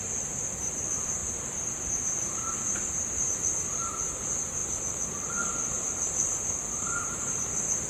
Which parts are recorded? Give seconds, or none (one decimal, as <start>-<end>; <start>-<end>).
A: 0.0-1.2; 1.9-7.9